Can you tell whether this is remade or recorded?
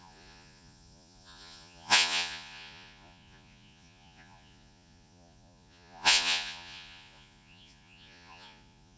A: remade